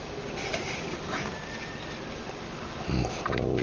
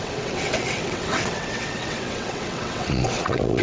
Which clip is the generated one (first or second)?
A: second